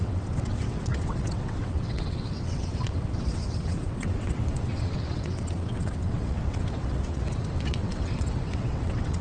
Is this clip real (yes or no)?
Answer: no